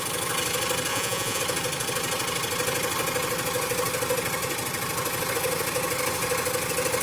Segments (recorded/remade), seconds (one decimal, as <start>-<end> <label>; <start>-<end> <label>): 0.0-0.9 recorded; 0.9-1.4 remade; 1.4-7.0 recorded